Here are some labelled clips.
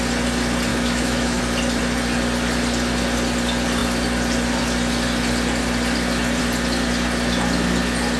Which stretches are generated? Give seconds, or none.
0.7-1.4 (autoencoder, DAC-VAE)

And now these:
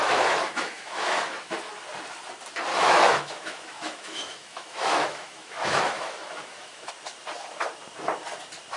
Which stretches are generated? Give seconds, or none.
0.0-1.7 (autoencoder, DAC-VAE); 2.7-6.9

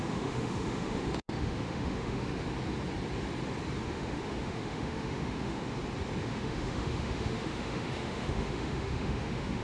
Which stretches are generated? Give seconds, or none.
0.0-2.4 (autoencoder, DAC-VAE); 3.8-5.6; 6.2-9.6

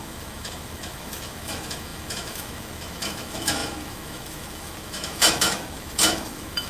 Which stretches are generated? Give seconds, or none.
0.0-6.7 (autoencoder, DAC-VAE)